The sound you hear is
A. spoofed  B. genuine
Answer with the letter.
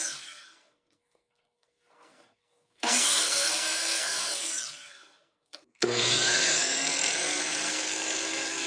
A